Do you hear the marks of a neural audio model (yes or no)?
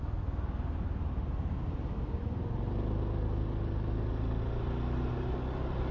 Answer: no